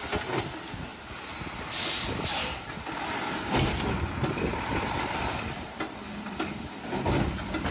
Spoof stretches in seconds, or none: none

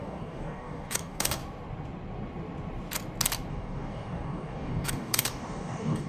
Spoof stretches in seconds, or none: 0.0-1.4 (codec, DAC); 3.5-6.1